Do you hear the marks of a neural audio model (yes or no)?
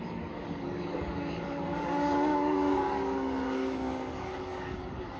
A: yes